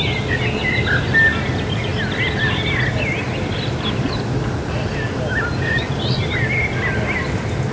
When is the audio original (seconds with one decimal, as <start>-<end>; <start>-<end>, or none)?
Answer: 0.0-7.7